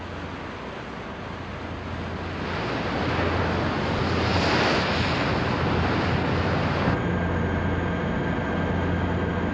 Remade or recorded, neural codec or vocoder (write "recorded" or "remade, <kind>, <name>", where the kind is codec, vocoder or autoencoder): recorded